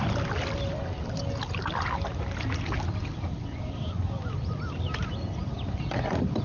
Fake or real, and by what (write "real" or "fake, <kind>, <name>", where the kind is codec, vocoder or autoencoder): real